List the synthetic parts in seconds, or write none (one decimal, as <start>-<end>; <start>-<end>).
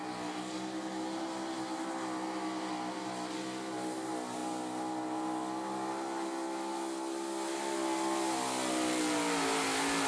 none